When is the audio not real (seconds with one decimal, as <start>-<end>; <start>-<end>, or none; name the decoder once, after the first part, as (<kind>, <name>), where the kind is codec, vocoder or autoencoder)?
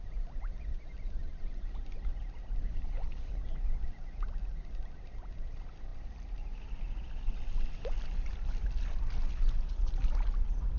2.6-3.4 (codec, HILCodec)